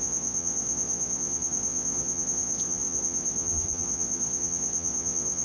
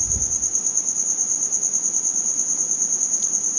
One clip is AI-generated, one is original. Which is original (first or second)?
second